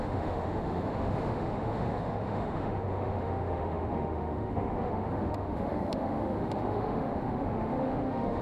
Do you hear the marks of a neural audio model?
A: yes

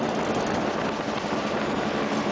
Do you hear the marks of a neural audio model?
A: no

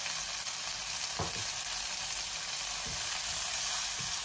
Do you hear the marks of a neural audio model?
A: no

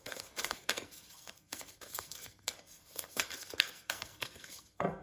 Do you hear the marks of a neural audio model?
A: yes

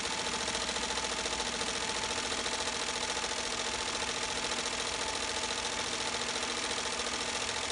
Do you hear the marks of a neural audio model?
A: no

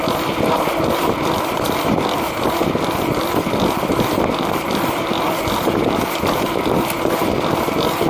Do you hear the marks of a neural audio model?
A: no